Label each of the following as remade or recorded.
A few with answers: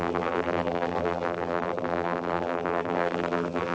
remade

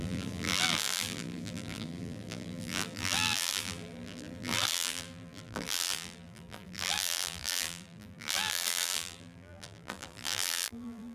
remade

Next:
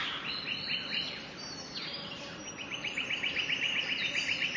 remade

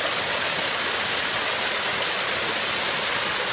recorded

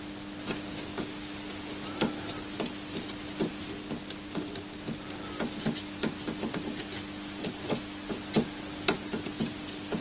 recorded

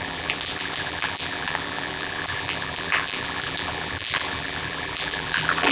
remade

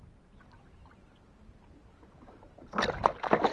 recorded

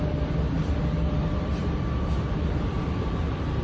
recorded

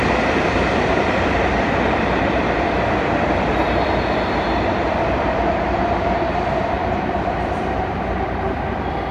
remade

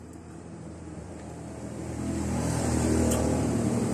remade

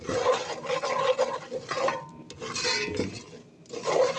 recorded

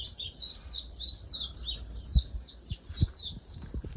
remade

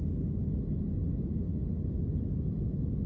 recorded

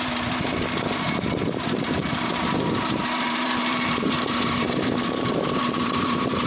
remade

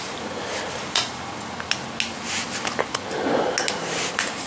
recorded